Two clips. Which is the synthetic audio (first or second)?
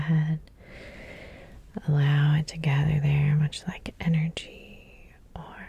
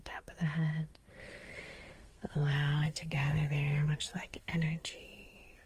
second